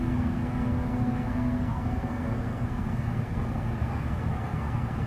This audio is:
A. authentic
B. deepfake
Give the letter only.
B